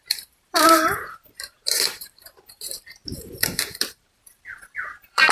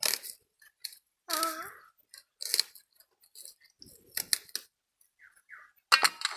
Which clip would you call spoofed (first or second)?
first